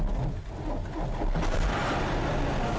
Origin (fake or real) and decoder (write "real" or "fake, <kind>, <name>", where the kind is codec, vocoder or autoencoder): real